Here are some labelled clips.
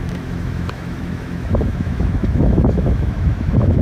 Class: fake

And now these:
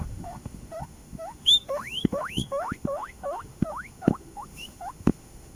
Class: fake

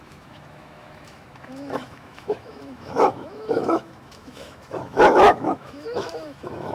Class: fake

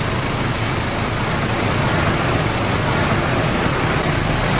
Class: real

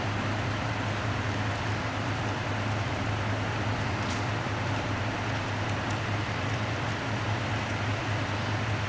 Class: fake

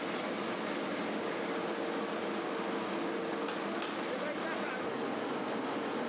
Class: real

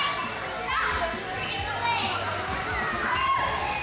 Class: real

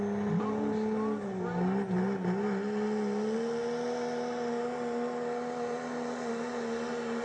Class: real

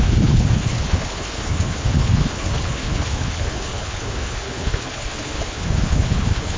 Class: fake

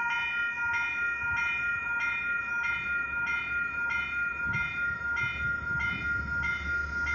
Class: real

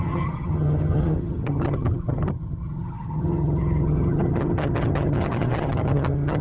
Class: fake